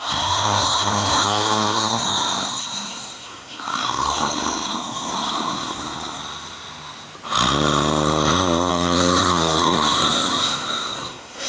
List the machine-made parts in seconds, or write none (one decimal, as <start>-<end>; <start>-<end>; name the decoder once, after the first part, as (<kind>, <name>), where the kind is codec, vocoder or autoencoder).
0.0-6.2 (codec, SNAC); 8.7-11.5